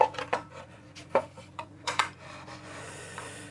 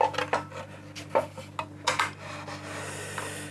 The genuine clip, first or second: second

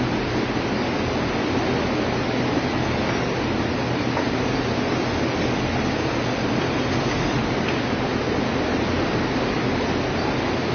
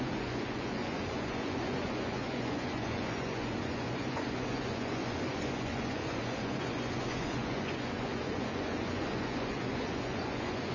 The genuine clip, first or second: first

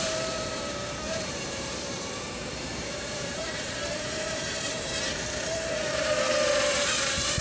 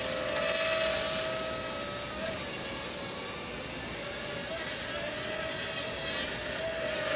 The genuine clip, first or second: second